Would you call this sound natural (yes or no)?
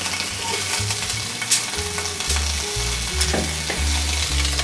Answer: yes